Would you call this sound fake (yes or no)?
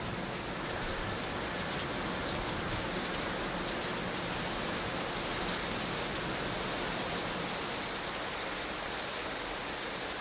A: no